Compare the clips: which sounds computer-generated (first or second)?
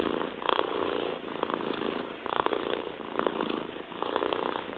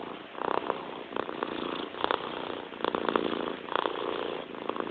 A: first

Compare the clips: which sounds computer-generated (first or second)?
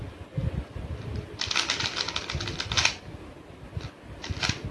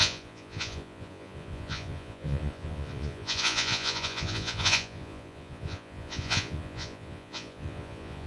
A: second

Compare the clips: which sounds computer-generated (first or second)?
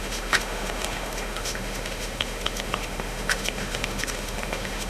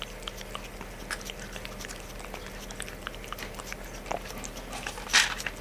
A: first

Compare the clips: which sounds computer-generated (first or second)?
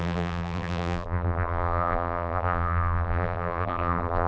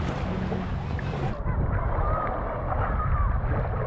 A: first